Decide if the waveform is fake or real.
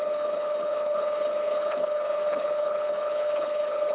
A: fake